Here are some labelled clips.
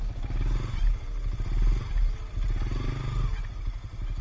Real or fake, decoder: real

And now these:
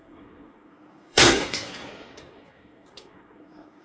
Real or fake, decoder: fake, codec, SNAC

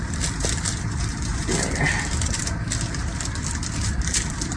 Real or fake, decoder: real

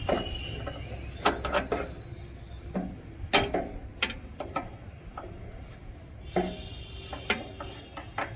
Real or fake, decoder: real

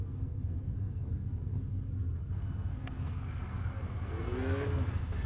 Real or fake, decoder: fake, codec, SNAC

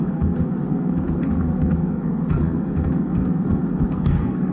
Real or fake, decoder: fake, codec, SNAC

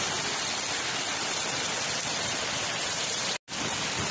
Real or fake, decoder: real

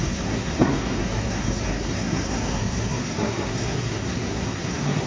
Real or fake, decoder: fake, codec, SNAC